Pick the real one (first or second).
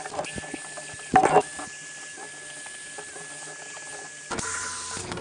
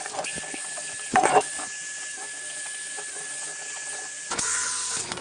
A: first